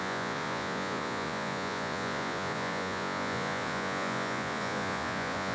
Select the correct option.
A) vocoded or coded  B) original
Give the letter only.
A